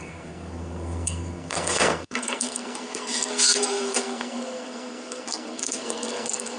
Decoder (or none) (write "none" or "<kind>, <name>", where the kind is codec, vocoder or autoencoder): codec, SNAC